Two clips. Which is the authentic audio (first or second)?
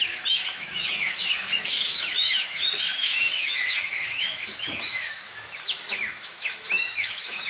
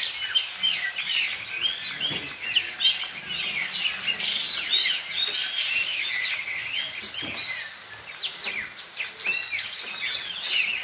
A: second